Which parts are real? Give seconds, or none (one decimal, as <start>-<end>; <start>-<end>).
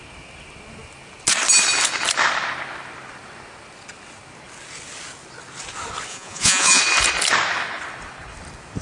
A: 0.0-6.1; 6.8-8.8